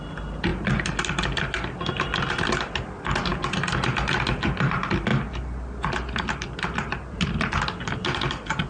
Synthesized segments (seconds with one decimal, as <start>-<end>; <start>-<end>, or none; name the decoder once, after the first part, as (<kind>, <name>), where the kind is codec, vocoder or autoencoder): none